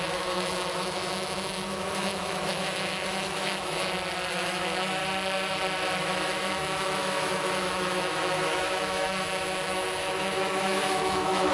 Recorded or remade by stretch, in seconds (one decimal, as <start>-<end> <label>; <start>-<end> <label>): 0.0-3.8 remade; 3.8-4.3 recorded; 4.3-5.0 remade; 5.0-6.0 recorded; 6.0-11.5 remade